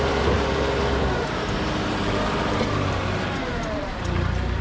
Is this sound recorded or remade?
remade